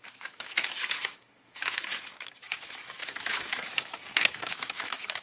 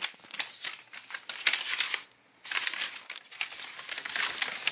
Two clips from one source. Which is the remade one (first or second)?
first